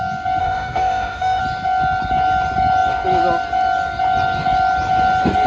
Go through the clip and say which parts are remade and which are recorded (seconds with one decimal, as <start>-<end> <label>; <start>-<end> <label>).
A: 0.0-0.4 recorded; 0.4-1.4 remade; 1.4-5.5 recorded